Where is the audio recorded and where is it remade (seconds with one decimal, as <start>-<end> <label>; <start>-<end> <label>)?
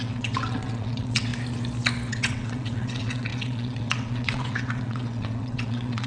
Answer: 0.0-1.3 remade; 1.3-2.1 recorded; 2.1-6.1 remade